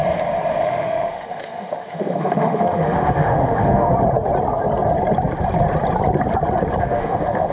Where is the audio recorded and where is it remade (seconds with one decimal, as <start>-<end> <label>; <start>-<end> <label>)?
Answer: 0.0-0.6 recorded; 0.6-3.9 remade; 3.9-6.8 recorded; 6.8-7.5 remade